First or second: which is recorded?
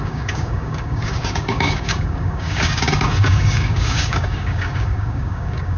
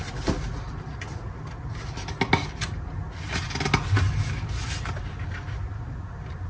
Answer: second